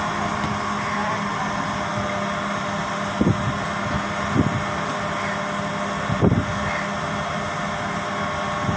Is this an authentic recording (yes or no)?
yes